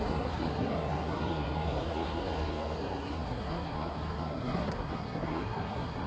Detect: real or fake fake